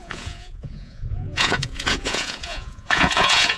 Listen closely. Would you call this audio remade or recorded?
remade